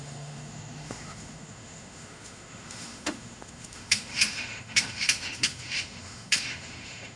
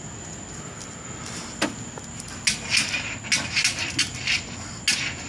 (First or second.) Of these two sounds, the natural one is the second